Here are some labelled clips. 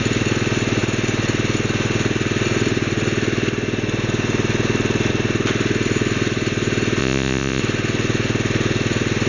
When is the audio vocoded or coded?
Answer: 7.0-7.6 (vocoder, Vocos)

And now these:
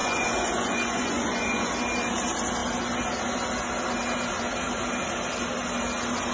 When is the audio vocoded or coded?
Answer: 0.0-1.7 (vocoder, Vocos)

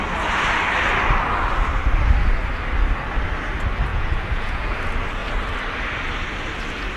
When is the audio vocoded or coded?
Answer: 3.9-4.7 (vocoder, Vocos)

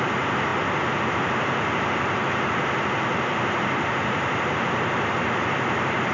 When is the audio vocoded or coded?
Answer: none

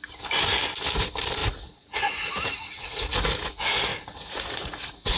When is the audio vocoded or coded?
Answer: 1.4-3.5 (vocoder, Vocos); 3.9-5.2

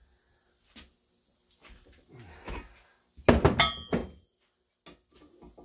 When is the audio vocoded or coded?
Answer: none

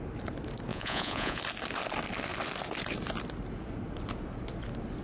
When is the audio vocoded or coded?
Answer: 0.7-1.4 (vocoder, Vocos)

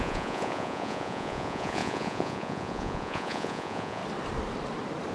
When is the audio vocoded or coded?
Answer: 0.0-4.0 (vocoder, Vocos)